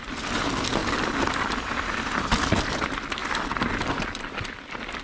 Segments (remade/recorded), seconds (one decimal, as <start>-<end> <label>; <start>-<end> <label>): 0.0-5.0 recorded

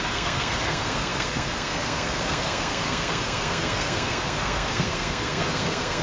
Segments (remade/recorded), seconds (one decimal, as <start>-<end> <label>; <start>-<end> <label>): 0.0-6.0 remade

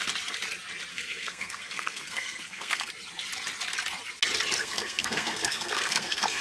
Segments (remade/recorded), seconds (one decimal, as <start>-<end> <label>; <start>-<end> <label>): 0.0-0.9 recorded; 0.9-2.9 remade; 2.9-4.6 recorded; 4.6-6.4 remade

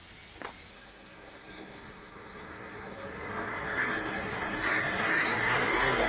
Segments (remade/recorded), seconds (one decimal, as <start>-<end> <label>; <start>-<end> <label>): 0.0-0.7 recorded; 0.7-6.1 remade

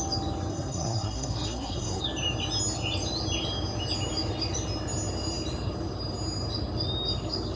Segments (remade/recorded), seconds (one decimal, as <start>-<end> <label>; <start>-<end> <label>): 0.0-0.5 recorded; 0.5-2.0 remade; 2.0-7.6 recorded

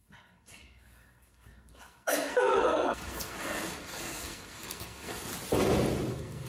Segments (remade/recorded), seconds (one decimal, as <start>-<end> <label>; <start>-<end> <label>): 0.0-5.3 remade; 5.3-6.1 recorded; 6.1-6.5 remade